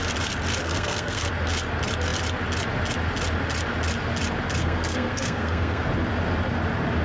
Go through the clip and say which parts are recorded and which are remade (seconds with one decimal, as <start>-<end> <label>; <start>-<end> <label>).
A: 0.0-0.6 recorded; 0.6-1.3 remade; 1.3-4.6 recorded; 4.6-5.8 remade; 5.8-7.0 recorded